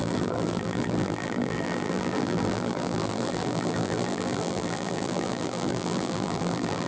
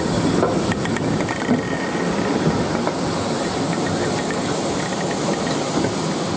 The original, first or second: second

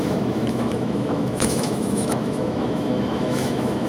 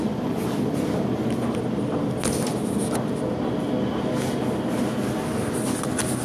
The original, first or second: second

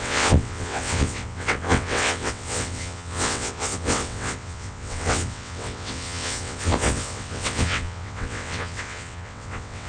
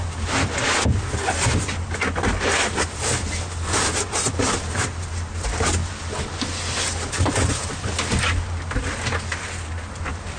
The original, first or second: second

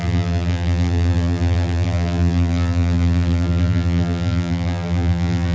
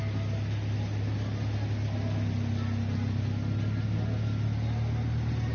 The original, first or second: second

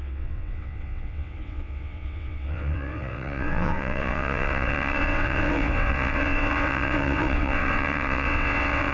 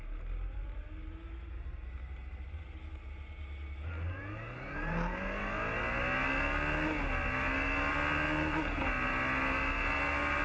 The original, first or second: second